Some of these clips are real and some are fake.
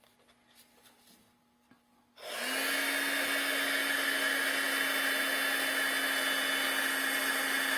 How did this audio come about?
real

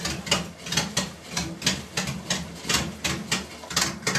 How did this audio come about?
real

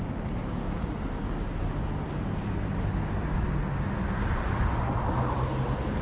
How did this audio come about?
real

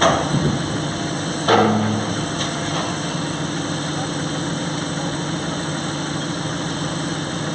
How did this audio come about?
real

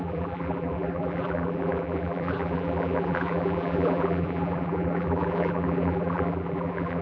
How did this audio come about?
fake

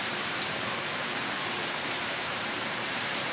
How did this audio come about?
fake